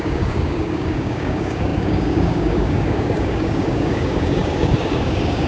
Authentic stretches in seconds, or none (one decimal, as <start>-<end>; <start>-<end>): none